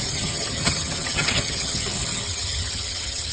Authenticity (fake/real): fake